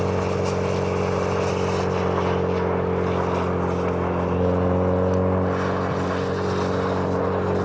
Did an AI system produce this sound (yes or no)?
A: no